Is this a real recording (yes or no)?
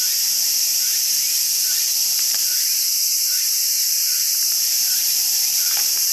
no